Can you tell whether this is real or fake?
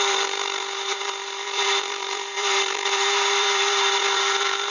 fake